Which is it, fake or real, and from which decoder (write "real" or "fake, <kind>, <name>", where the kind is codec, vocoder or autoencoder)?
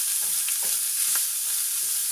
real